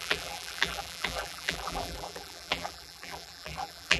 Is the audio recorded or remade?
remade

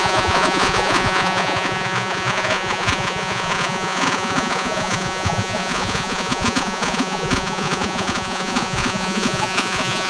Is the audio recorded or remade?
remade